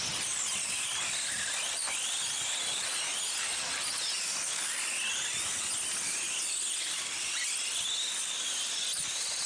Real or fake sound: real